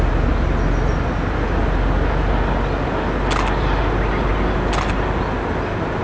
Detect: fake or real real